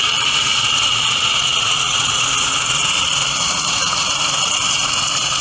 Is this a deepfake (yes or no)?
yes